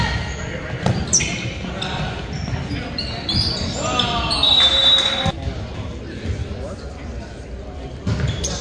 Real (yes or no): yes